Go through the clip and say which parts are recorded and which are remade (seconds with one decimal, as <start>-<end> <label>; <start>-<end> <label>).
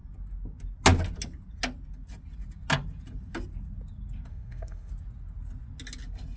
0.0-4.3 recorded; 4.3-4.9 remade; 4.9-6.4 recorded